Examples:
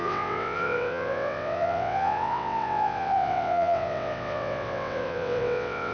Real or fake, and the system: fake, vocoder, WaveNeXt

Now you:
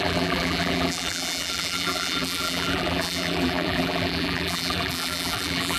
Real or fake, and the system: fake, vocoder, BigVGAN v2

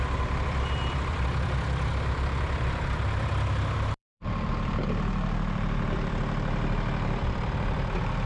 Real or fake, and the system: fake, vocoder, BigVGAN v2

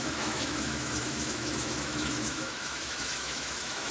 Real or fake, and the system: fake, autoencoder, DAC-VAE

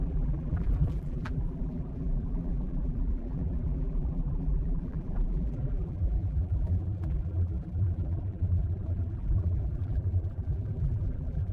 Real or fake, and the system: fake, vocoder, BigVGAN v2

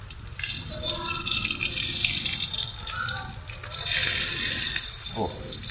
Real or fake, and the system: real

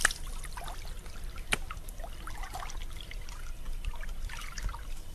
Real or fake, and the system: fake, vocoder, BigVGAN v2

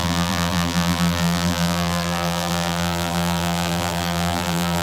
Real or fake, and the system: fake, vocoder, BigVGAN v2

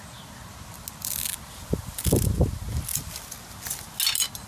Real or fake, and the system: real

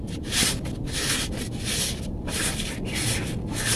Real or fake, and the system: real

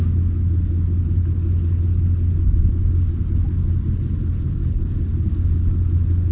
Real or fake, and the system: real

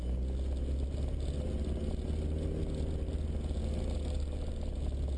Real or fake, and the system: real